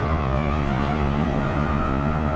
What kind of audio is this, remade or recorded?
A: remade